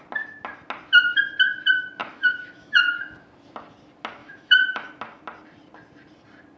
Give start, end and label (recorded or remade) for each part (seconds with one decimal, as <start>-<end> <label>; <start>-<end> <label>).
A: 0.0-2.0 recorded; 2.0-2.9 remade; 2.9-4.2 recorded; 4.2-5.0 remade; 5.0-6.6 recorded

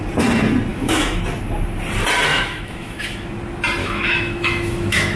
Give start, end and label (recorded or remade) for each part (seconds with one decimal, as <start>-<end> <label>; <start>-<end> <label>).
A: 0.0-0.7 recorded; 0.7-1.2 remade; 1.2-2.3 recorded; 2.3-3.3 remade; 3.3-3.8 recorded; 3.8-5.2 remade